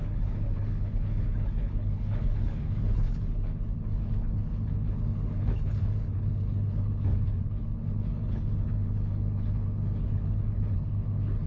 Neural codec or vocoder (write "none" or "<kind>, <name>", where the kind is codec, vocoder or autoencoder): codec, HILCodec